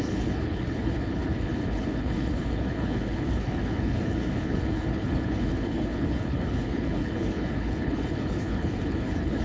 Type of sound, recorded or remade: remade